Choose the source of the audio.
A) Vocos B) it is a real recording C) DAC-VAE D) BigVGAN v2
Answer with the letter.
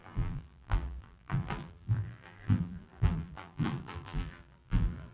D